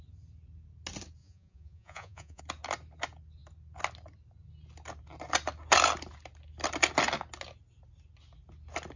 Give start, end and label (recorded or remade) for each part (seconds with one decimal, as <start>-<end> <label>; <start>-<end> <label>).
0.0-1.2 recorded; 1.2-2.4 remade; 2.4-9.0 recorded